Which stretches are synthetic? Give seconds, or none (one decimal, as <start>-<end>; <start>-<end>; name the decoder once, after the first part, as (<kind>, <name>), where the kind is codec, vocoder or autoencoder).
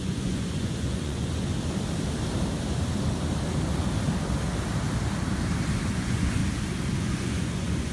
0.0-1.5 (vocoder, Vocos); 5.9-6.4; 7.0-7.9